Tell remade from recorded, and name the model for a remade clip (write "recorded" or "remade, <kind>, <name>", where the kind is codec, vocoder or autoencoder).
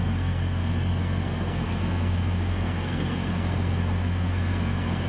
remade, codec, SNAC